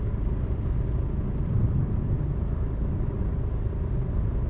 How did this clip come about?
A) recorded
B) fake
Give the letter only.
A